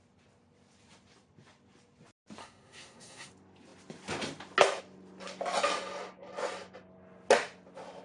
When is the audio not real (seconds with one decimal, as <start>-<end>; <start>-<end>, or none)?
2.4-3.3